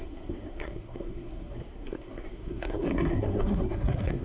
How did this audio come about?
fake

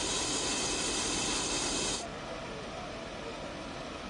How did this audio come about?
real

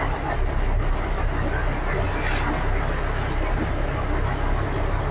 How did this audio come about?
real